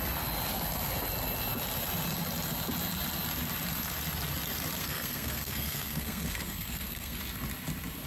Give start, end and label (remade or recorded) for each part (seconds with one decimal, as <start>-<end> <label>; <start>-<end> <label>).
0.0-4.8 recorded; 4.8-7.2 remade; 7.2-8.1 recorded